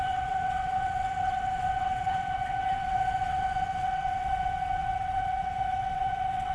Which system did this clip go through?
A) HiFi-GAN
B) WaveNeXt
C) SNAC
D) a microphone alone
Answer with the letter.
B